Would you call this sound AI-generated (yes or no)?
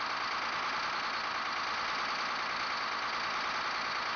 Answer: no